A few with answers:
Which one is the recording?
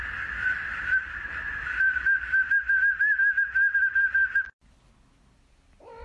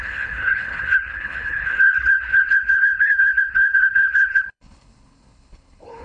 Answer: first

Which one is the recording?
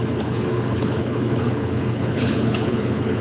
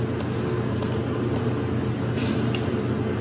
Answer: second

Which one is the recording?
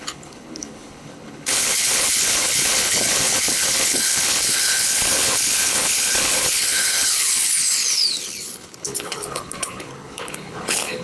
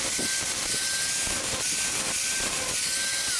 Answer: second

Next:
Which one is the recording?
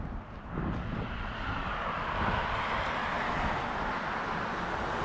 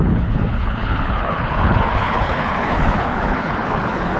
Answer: first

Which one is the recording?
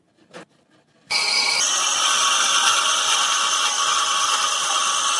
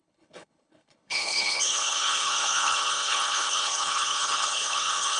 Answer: first